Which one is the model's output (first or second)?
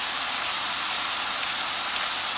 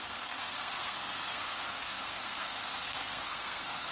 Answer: second